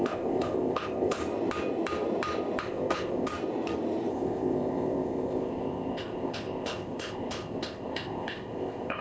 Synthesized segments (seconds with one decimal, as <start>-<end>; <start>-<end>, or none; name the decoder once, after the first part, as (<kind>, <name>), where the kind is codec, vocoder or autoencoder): 0.0-1.2 (codec, ZipCodec); 2.6-3.3; 4.1-9.0